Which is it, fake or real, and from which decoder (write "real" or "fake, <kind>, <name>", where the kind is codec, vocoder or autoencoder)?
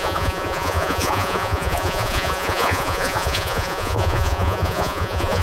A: fake, vocoder, Vocos